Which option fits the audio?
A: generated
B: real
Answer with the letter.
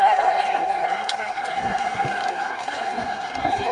A